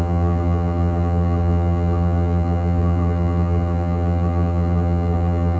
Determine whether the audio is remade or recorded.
remade